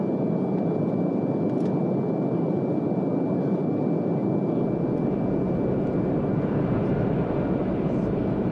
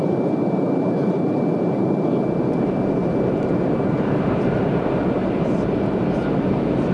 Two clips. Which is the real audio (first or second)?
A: first